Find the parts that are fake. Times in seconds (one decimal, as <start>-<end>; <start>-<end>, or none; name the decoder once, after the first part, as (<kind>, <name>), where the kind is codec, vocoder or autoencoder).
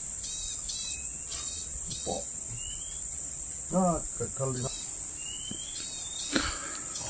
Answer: 0.9-2.5 (vocoder, Vocos); 3.1-3.7